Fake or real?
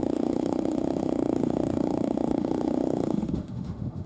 fake